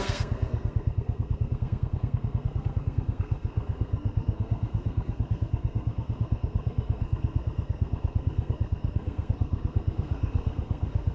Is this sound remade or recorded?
remade